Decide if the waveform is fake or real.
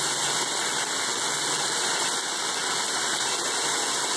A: real